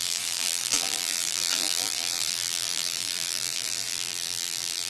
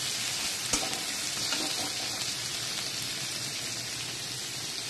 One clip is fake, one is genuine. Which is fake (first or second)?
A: first